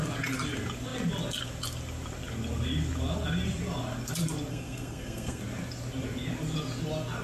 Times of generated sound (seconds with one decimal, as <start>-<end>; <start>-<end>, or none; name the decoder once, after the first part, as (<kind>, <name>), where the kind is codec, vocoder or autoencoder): 4.5-5.4 (codec, SNAC)